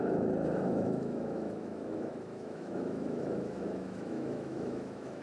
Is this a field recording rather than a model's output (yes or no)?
no